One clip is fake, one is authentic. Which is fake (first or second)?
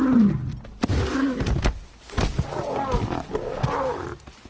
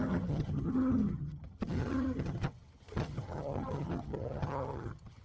second